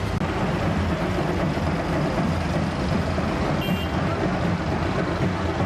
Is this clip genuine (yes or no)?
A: yes